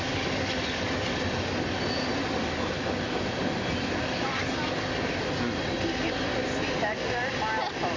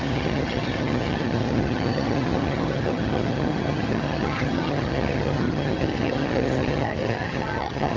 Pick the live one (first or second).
first